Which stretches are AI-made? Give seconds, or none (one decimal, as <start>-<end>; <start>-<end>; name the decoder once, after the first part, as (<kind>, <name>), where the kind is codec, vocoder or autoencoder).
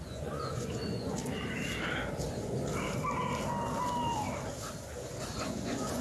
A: 0.0-1.2 (vocoder, Vocos); 2.3-2.7; 4.8-6.0